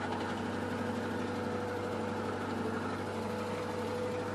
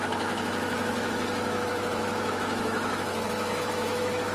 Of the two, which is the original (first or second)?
first